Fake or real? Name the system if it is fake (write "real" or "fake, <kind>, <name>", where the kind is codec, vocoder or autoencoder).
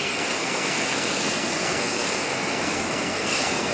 fake, codec, SNAC